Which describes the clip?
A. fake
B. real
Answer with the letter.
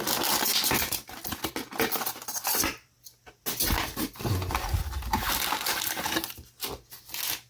B